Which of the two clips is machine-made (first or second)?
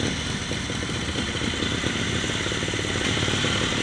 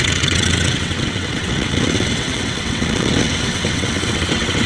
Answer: second